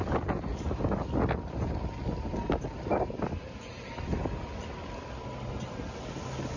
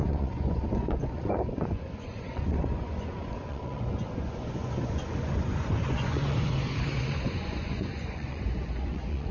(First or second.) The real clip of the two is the first